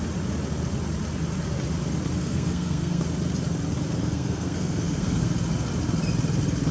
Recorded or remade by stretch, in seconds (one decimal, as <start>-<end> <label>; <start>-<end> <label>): 0.0-2.2 recorded; 2.2-3.0 remade; 3.0-4.0 recorded; 4.0-5.3 remade; 5.3-6.7 recorded